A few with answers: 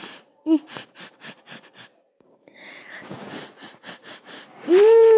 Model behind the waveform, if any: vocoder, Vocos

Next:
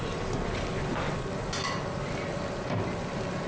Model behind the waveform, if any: none